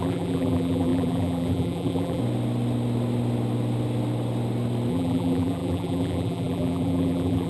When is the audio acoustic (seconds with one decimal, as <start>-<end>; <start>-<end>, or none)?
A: 2.2-4.9